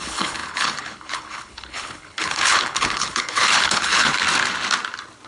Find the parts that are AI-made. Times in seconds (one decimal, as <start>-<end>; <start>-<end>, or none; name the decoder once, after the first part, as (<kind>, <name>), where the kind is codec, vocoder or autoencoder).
0.0-4.2 (codec, HILCodec)